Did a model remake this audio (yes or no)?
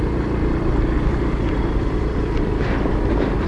no